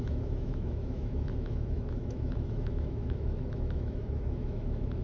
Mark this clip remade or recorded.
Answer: remade